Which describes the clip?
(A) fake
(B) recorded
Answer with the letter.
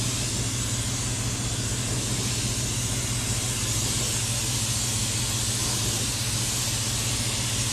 B